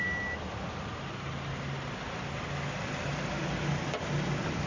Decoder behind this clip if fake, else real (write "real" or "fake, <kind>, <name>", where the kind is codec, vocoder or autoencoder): real